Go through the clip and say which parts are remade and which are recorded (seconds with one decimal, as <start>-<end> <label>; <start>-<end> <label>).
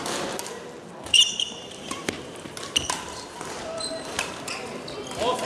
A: 0.0-1.0 recorded; 1.0-4.3 remade; 4.3-5.5 recorded